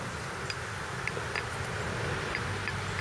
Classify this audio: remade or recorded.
recorded